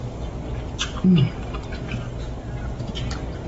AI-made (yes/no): no